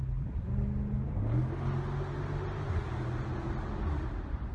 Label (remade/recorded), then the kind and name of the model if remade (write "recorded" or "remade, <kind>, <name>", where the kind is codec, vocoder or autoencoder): recorded